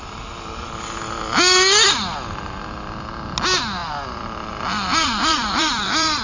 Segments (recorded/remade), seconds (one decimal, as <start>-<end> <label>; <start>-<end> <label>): 0.0-3.8 recorded; 3.8-6.2 remade